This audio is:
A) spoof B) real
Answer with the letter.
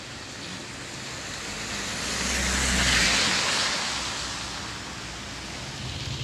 B